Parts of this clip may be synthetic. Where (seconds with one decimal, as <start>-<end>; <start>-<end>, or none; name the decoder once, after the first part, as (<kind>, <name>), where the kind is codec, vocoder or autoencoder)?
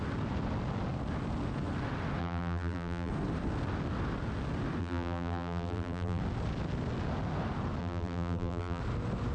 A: 2.2-3.1 (vocoder, BigVGAN v2); 4.8-6.2; 7.8-8.8